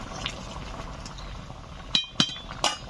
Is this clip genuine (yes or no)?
yes